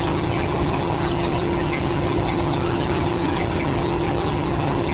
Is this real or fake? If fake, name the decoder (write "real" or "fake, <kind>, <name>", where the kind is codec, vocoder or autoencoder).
fake, vocoder, HiFi-GAN